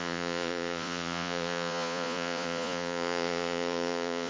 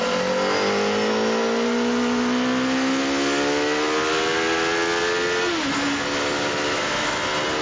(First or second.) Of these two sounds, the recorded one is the second